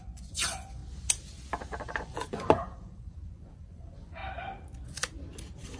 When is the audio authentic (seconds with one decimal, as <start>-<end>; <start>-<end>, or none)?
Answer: 0.8-1.8; 4.2-5.8